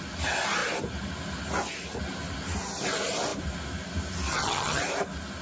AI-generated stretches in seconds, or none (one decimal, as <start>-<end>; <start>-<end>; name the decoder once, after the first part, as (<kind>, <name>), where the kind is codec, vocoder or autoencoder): 4.3-4.8 (vocoder, HiFi-GAN)

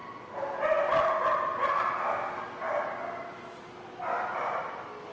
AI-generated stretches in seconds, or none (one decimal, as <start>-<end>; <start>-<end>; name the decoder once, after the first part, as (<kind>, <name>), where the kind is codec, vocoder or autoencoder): none

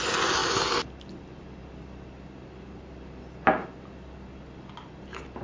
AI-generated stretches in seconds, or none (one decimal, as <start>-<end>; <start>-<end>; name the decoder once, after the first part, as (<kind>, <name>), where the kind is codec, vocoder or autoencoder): none